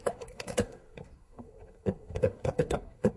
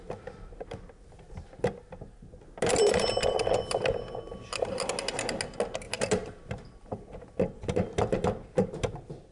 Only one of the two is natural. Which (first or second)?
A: second